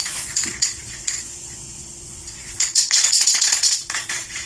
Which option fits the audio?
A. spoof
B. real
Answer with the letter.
A